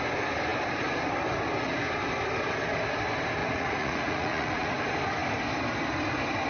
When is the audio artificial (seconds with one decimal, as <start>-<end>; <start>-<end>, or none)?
3.4-4.8